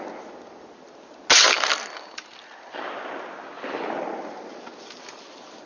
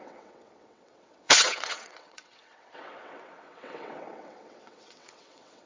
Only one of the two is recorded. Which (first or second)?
first